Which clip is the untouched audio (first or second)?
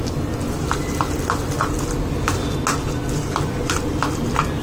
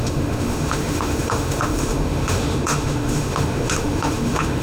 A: first